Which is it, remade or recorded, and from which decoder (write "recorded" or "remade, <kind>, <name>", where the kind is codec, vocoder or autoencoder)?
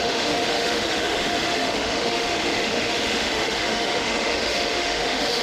remade, autoencoder, DAC-VAE